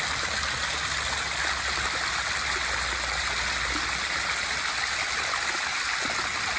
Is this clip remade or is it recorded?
recorded